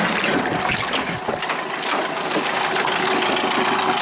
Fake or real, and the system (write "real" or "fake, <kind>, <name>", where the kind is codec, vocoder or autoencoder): real